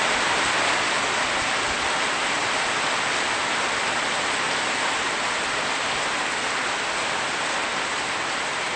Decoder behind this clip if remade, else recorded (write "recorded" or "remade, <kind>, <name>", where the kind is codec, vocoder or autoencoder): recorded